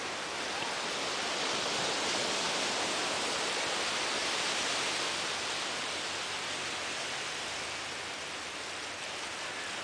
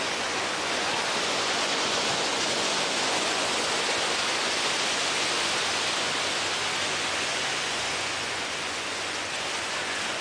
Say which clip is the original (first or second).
first